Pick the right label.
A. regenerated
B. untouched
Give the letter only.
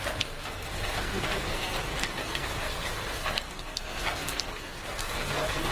A